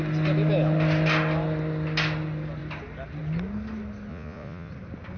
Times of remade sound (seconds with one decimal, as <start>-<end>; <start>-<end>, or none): 4.1-4.7